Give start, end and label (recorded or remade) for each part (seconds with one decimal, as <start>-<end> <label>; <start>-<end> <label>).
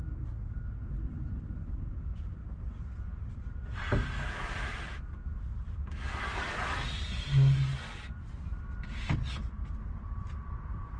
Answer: 0.0-11.0 recorded